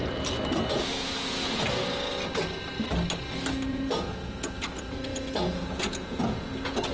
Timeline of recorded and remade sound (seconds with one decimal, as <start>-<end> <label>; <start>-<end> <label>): 0.0-0.7 recorded; 0.7-2.1 remade; 2.1-3.7 recorded; 3.7-6.9 remade